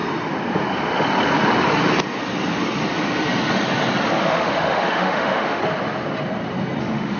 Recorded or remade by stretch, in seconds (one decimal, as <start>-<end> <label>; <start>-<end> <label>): 0.0-4.2 recorded; 4.2-5.6 remade; 5.6-6.8 recorded; 6.8-7.2 remade